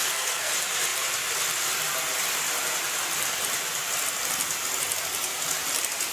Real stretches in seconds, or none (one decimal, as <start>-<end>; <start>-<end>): 0.5-6.1